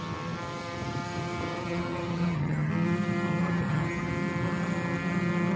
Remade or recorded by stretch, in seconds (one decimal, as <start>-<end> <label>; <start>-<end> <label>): 0.0-1.6 recorded; 1.6-2.7 remade; 2.7-3.4 recorded; 3.4-4.1 remade; 4.1-5.6 recorded